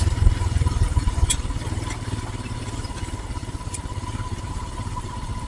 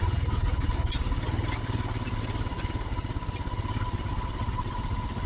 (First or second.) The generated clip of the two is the first